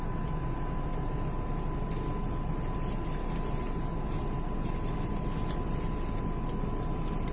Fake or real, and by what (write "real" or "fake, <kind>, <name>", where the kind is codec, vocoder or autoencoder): real